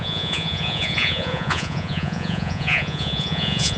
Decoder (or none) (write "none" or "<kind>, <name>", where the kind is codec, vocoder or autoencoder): vocoder, Vocos